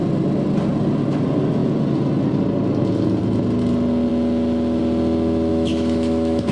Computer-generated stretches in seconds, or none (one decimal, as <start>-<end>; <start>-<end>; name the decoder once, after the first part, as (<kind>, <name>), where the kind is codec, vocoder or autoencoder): 5.5-6.5 (autoencoder, DAC-VAE)